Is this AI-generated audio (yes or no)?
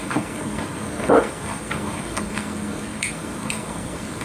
yes